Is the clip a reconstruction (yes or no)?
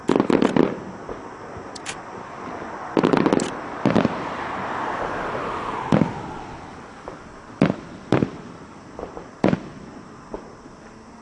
no